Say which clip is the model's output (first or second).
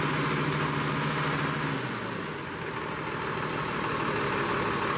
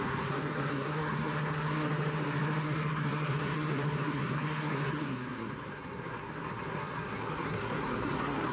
second